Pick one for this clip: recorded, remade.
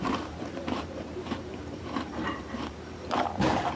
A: remade